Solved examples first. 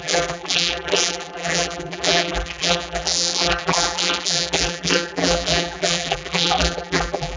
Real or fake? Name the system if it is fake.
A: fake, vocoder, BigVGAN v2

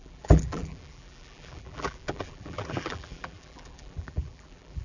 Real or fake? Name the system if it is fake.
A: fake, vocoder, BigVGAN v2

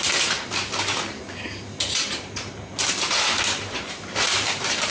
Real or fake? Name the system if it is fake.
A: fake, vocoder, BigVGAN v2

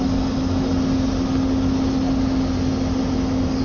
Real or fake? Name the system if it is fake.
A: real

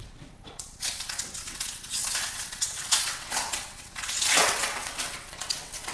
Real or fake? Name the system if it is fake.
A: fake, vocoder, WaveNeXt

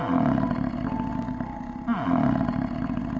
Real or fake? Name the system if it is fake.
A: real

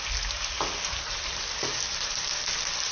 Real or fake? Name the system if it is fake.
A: real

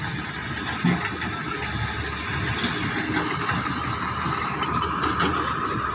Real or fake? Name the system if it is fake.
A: real